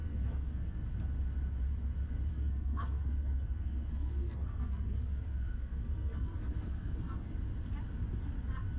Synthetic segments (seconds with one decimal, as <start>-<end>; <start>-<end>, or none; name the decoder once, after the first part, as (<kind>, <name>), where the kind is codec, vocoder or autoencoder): 0.0-0.8 (codec, SNAC); 2.3-7.4